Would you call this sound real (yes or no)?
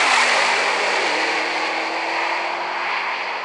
yes